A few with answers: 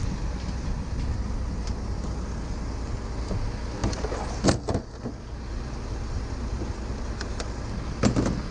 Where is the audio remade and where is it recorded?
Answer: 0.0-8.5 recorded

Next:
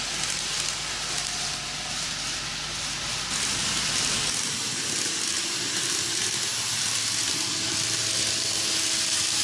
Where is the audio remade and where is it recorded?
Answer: 0.0-9.4 recorded

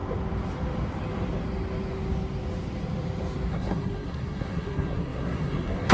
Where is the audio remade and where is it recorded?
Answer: 0.0-3.5 recorded; 3.5-5.9 remade

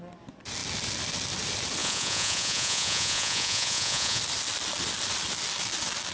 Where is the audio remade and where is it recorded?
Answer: 0.0-1.8 recorded; 1.8-4.2 remade; 4.2-6.1 recorded

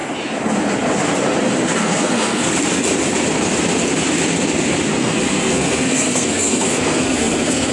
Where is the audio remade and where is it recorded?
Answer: 0.0-1.8 recorded; 1.8-2.5 remade; 2.5-5.0 recorded; 5.0-7.7 remade

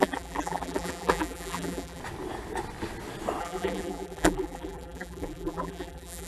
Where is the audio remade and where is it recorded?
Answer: 0.0-2.0 remade; 2.0-3.4 recorded; 3.4-6.3 remade

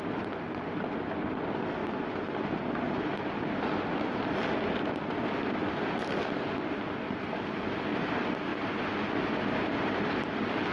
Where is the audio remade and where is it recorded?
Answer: 0.0-10.7 recorded